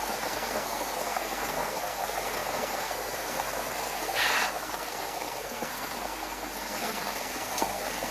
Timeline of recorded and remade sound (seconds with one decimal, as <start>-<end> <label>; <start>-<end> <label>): 0.0-8.1 remade